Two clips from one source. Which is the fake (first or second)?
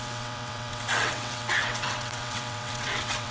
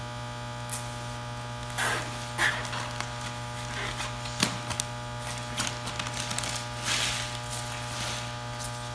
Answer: first